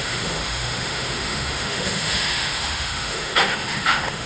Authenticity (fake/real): fake